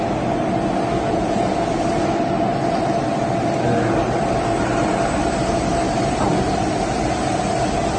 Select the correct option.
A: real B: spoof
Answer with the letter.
A